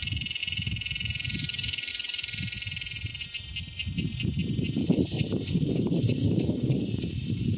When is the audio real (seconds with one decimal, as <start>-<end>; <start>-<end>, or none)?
0.0-4.8